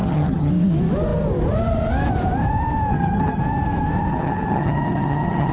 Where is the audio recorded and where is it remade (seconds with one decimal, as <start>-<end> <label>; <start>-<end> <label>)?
0.0-0.5 remade; 0.5-2.9 recorded; 2.9-3.4 remade; 3.4-4.1 recorded; 4.1-5.5 remade